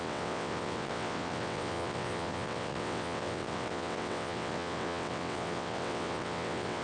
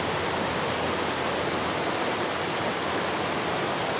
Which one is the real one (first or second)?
second